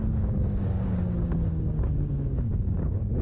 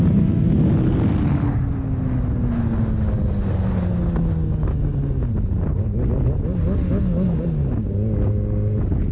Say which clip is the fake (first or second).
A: first